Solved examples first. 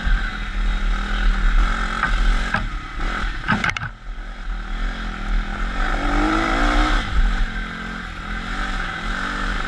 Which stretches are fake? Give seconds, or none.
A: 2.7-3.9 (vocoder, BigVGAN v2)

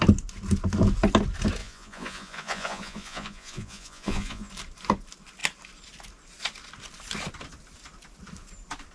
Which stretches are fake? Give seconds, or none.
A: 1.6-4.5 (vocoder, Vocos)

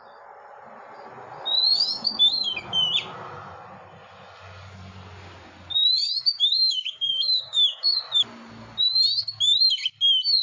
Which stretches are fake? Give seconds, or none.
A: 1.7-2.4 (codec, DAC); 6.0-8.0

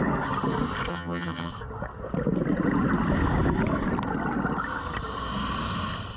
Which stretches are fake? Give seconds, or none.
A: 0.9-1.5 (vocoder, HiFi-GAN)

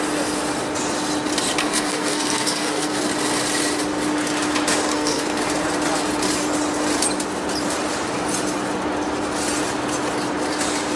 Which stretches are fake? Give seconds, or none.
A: 1.6-3.1 (codec, SNAC); 4.9-5.4

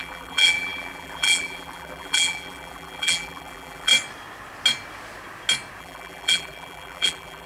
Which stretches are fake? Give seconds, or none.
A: 0.0-3.9 (vocoder, BigVGAN v2); 5.8-7.5

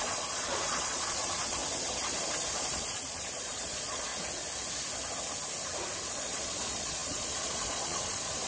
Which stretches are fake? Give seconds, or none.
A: 0.0-1.6 (vocoder, Vocos); 2.6-4.1; 6.1-8.5

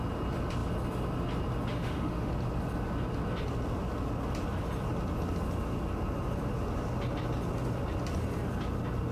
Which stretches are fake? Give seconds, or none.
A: 1.7-2.3 (autoencoder, DAC-VAE)